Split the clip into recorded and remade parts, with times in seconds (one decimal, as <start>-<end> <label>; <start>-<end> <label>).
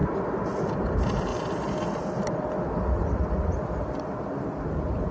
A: 0.0-0.7 recorded; 0.7-1.3 remade; 1.3-4.0 recorded; 4.0-5.1 remade